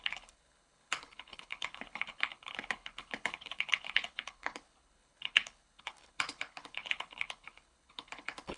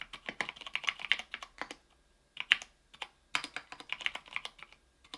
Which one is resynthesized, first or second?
first